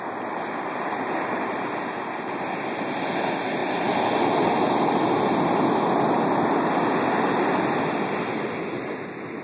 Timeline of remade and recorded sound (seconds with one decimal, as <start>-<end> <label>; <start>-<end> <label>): 0.0-9.4 recorded